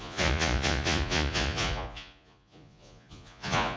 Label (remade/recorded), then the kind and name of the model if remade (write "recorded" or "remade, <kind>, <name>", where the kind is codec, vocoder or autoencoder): remade, vocoder, Vocos